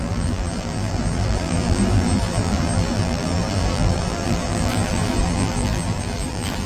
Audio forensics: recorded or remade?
remade